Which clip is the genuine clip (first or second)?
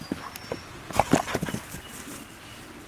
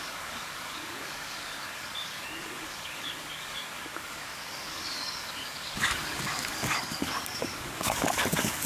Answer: first